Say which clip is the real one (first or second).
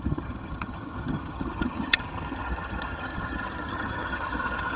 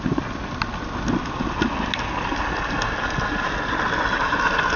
second